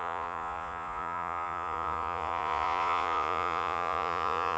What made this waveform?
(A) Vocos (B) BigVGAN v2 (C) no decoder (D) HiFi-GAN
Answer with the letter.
A